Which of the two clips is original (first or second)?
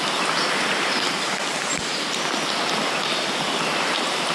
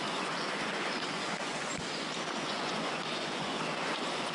first